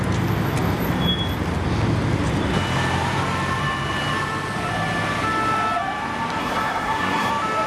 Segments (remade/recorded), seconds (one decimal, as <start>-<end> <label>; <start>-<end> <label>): 0.0-6.4 recorded; 6.4-7.3 remade; 7.3-7.7 recorded